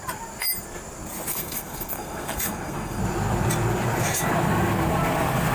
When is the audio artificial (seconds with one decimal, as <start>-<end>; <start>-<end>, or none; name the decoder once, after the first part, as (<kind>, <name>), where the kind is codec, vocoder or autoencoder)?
1.3-3.0 (codec, SNAC)